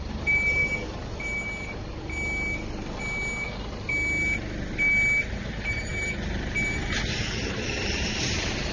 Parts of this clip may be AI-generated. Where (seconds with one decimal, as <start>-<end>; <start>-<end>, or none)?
0.0-0.6; 5.2-8.7